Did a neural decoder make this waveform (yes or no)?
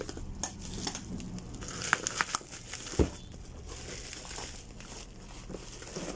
no